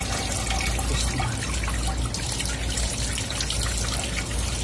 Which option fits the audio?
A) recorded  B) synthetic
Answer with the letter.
A